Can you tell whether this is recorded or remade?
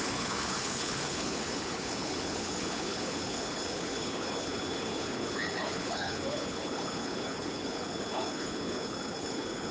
remade